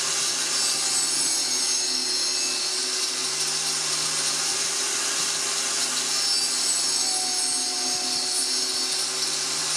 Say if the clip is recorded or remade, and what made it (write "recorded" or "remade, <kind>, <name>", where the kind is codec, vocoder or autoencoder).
recorded